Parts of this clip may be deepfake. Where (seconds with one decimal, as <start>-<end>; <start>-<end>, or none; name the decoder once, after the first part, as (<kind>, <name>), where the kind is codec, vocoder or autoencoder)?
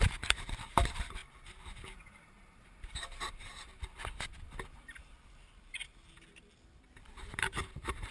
0.0-1.2 (vocoder, BigVGAN v2); 1.8-3.7; 7.5-8.1